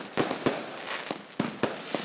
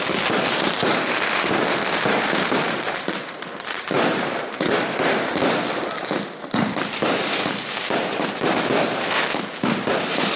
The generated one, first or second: second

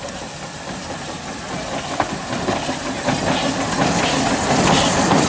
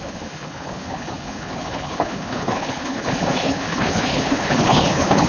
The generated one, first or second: second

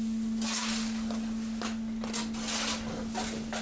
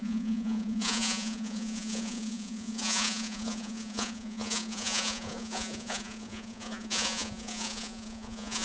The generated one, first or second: second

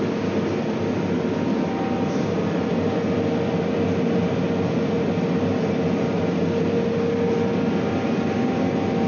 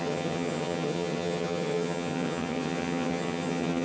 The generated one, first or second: second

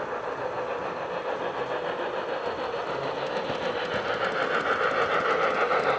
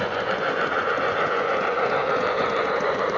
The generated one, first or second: second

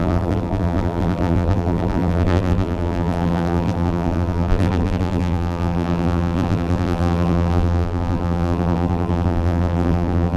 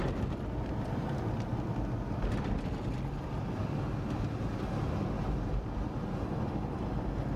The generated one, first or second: first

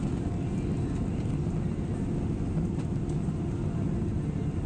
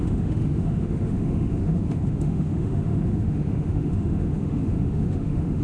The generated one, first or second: second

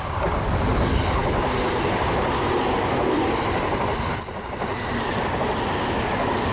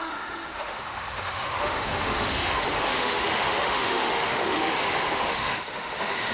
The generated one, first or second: second